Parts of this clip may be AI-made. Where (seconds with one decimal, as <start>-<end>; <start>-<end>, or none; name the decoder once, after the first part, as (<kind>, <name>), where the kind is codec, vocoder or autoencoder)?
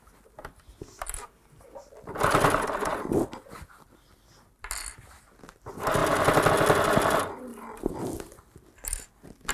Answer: none